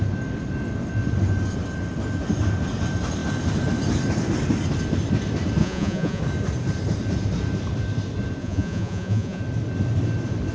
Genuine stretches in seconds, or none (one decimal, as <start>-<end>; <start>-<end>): 0.0-5.6; 6.2-8.4; 9.4-10.5